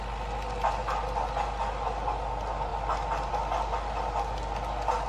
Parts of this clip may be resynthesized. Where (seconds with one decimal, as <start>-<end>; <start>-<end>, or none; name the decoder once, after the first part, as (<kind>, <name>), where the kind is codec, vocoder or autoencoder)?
none